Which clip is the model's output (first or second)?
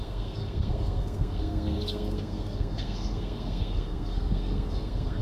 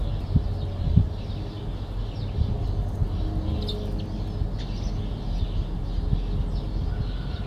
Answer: first